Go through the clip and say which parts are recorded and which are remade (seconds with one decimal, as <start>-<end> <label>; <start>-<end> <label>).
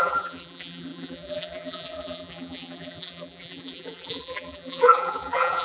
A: 0.0-5.6 remade